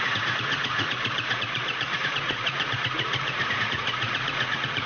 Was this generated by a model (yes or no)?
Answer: yes